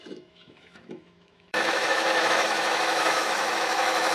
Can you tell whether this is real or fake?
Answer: fake